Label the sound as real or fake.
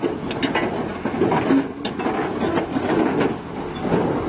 real